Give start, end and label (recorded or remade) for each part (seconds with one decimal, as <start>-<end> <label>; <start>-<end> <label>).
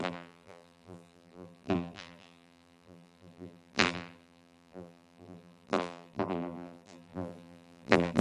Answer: 0.0-8.2 remade